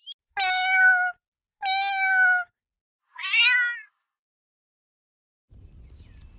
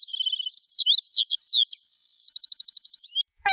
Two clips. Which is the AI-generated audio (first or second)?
second